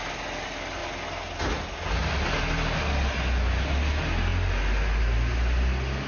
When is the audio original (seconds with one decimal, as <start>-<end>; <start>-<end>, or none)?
0.0-6.1